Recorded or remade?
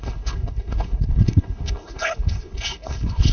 remade